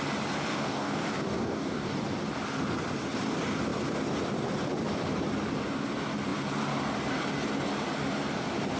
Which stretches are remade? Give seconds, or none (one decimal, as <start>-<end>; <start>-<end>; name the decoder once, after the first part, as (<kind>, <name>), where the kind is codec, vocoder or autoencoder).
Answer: 0.5-2.0 (codec, DAC)

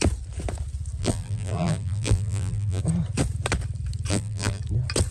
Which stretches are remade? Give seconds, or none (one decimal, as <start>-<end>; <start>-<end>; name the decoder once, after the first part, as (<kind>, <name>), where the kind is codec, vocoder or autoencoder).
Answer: 1.0-2.8 (vocoder, BigVGAN v2); 4.1-4.6

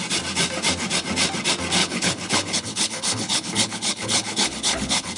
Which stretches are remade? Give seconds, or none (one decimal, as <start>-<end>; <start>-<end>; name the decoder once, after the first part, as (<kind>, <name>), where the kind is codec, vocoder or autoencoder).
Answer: 1.8-5.2 (codec, HILCodec)